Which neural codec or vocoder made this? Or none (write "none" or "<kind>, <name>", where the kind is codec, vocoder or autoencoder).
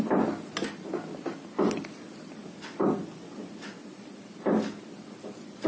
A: none